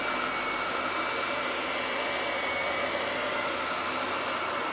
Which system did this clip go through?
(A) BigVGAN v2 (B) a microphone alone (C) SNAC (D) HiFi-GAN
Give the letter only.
B